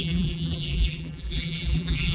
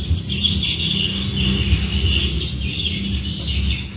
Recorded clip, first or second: second